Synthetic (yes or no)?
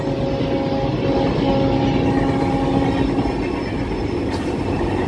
no